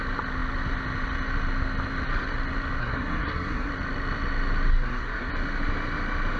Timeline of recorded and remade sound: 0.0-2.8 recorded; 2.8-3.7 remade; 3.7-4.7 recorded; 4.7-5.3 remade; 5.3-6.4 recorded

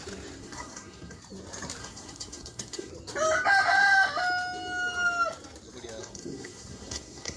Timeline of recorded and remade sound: 0.0-0.4 recorded; 0.4-1.2 remade; 1.2-1.8 recorded; 1.8-2.9 remade; 2.9-6.0 recorded; 6.0-7.4 remade

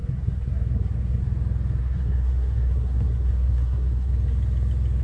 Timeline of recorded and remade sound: 0.0-1.2 remade; 1.2-1.8 recorded; 1.8-4.1 remade; 4.1-5.0 recorded